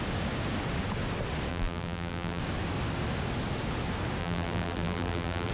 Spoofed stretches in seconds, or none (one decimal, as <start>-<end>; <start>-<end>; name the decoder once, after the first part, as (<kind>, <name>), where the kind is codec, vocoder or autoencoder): 1.5-2.4 (vocoder, BigVGAN v2); 4.2-5.5